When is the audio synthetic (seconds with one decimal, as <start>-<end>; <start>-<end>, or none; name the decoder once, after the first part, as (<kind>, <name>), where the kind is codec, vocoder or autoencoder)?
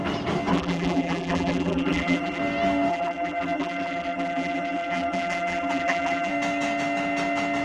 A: 0.5-2.4 (vocoder, BigVGAN v2); 2.9-6.3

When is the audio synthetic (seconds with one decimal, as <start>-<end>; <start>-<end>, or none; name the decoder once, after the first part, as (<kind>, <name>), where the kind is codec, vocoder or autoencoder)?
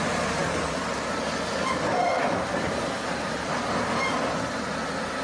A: none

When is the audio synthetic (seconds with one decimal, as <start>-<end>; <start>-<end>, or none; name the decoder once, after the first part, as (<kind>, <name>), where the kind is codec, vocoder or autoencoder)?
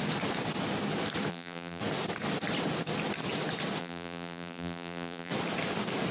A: 1.3-1.8 (vocoder, BigVGAN v2); 3.8-5.3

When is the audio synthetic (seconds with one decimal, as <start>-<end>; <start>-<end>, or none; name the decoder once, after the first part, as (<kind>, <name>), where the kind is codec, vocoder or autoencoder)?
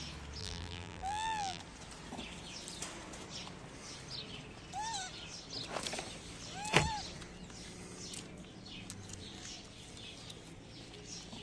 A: 0.4-1.6 (vocoder, BigVGAN v2)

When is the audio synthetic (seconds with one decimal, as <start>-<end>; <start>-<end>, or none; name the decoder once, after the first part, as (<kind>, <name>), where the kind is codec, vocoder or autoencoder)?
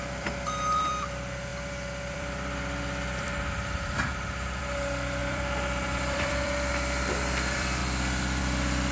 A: 0.0-7.8 (vocoder, BigVGAN v2); 8.4-8.9